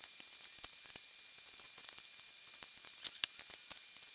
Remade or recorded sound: recorded